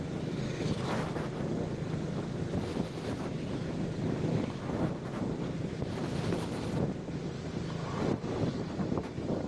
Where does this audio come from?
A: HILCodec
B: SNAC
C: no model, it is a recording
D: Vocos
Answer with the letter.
C